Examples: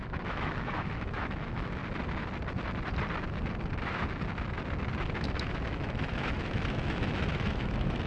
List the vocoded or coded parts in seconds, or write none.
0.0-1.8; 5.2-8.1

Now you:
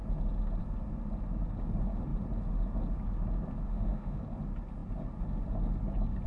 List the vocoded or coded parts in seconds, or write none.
3.7-4.2

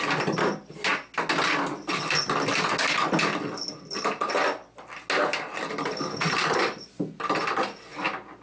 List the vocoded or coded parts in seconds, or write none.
none

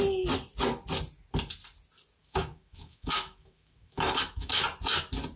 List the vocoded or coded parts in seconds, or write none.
2.2-4.6

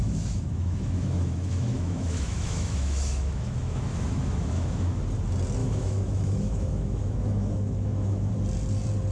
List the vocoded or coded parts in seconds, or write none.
0.0-5.0; 5.6-8.3

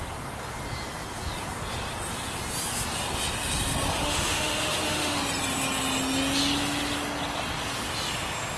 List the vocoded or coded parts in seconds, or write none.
3.9-5.2

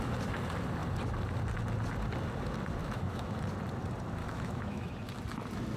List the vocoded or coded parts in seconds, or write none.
2.8-3.4; 4.2-4.9

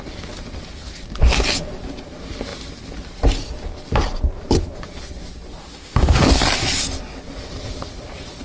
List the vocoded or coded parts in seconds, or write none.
5.6-6.2